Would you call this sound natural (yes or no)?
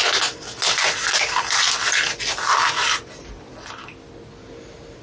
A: yes